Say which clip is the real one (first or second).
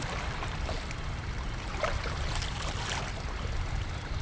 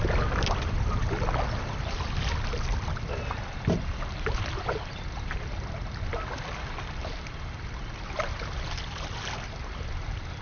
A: second